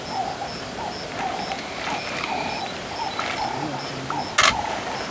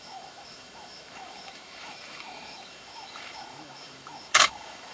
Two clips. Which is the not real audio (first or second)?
second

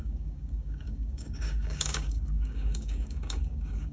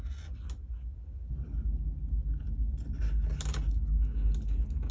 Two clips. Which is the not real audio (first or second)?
first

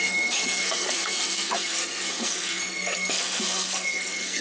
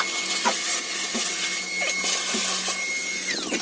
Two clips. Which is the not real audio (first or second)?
first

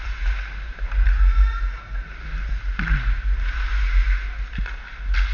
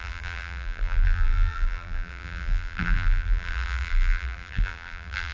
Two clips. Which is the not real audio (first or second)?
second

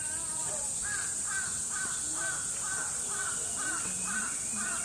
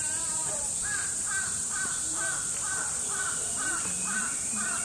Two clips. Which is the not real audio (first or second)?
second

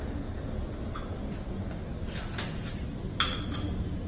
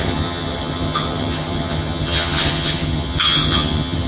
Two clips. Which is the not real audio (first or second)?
second